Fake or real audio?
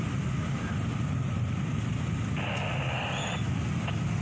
real